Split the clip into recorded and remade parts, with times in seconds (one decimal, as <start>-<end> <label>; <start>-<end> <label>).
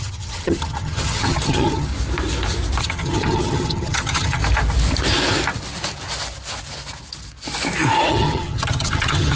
0.0-1.9 remade; 1.9-2.8 recorded; 2.8-4.4 remade; 4.4-8.1 recorded; 8.1-9.3 remade